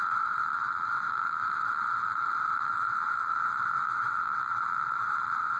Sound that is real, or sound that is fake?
fake